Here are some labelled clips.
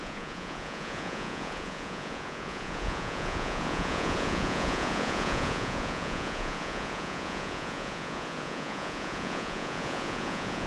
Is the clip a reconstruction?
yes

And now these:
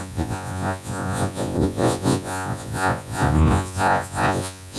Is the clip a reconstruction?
yes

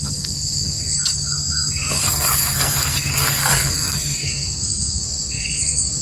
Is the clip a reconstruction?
yes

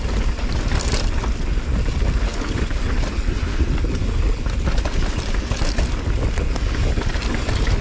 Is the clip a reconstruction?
no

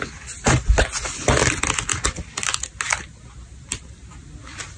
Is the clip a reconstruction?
no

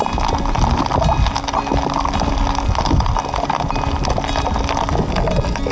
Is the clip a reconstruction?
no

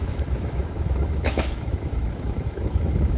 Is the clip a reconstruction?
yes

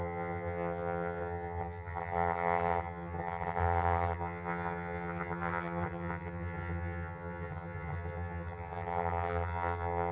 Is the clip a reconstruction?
yes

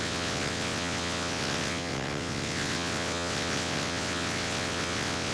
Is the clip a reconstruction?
yes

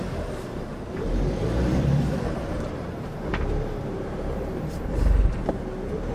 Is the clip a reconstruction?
yes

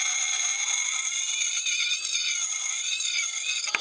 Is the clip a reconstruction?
no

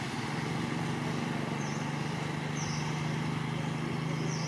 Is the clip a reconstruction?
no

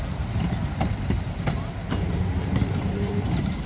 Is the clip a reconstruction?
yes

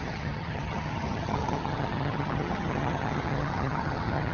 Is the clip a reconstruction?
yes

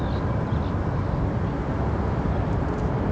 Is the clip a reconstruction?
no